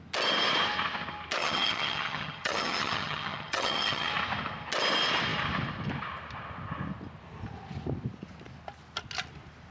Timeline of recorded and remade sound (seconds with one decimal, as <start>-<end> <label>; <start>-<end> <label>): 0.0-1.4 recorded; 1.4-4.1 remade; 4.1-9.7 recorded